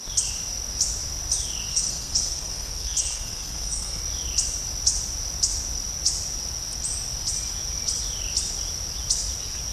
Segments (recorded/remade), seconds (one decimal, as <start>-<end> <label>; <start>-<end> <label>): 0.0-1.7 recorded; 1.7-4.0 remade; 4.0-9.7 recorded

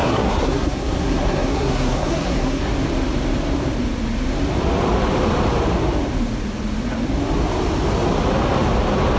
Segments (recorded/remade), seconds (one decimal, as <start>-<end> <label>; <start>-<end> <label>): 0.0-2.7 remade; 2.7-9.2 recorded

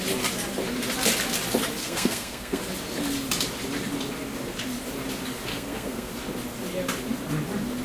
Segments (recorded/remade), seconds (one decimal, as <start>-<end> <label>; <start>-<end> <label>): 0.0-1.8 recorded; 1.8-2.6 remade; 2.6-5.5 recorded; 5.5-6.1 remade; 6.1-7.8 recorded

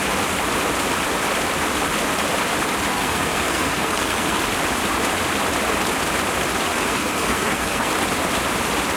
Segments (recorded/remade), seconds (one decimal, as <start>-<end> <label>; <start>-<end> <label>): 0.0-2.9 recorded; 2.9-4.4 remade; 4.4-6.7 recorded; 6.7-7.9 remade; 7.9-9.0 recorded